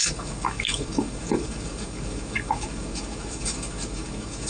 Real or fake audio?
fake